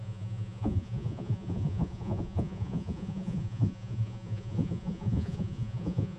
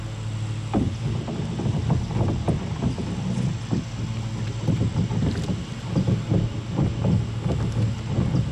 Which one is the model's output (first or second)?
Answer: first